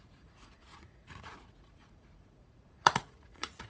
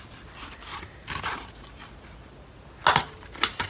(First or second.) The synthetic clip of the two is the first